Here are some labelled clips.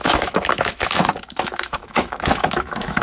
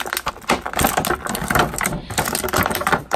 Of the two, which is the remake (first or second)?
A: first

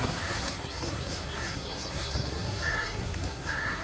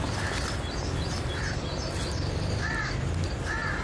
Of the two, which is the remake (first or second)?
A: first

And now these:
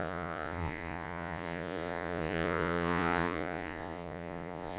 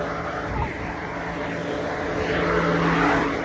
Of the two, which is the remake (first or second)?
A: first